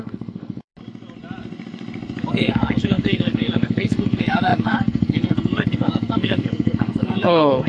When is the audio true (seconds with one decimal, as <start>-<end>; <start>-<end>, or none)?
0.7-2.3